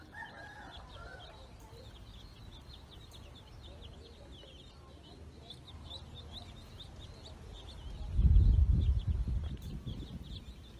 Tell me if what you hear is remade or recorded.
recorded